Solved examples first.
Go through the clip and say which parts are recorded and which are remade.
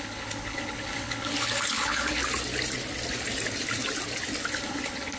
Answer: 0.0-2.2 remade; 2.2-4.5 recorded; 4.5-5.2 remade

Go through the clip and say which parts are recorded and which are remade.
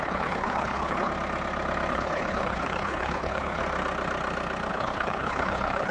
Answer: 0.0-1.1 remade; 1.1-1.9 recorded; 1.9-3.6 remade; 3.6-4.7 recorded; 4.7-5.9 remade